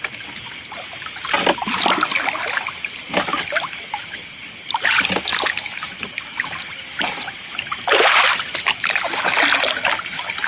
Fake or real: real